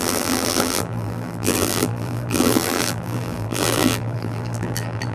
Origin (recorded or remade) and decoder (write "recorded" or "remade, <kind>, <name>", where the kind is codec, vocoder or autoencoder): remade, vocoder, BigVGAN v2